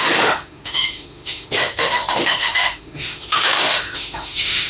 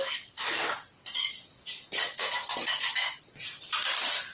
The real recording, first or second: second